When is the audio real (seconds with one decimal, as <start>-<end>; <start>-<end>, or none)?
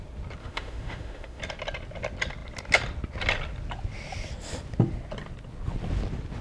0.0-0.4; 1.4-6.4